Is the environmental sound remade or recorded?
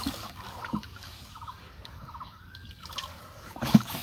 remade